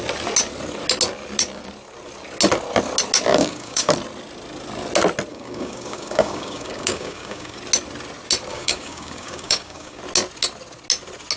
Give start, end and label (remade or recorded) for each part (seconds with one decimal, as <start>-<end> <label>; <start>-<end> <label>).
0.0-3.3 recorded; 3.3-3.9 remade; 3.9-5.3 recorded; 5.3-7.6 remade; 7.6-8.5 recorded; 8.5-10.0 remade; 10.0-11.4 recorded